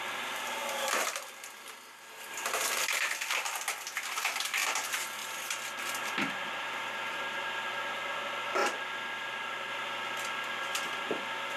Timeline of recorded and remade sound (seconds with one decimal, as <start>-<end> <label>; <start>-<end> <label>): 0.0-11.6 recorded